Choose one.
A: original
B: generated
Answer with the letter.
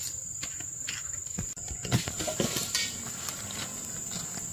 A